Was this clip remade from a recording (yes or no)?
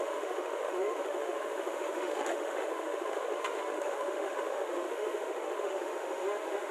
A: yes